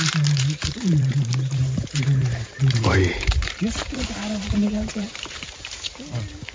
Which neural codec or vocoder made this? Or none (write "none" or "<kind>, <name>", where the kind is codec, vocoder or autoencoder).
vocoder, BigVGAN v2